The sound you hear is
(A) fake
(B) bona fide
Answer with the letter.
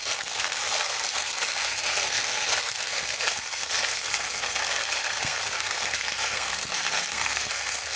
A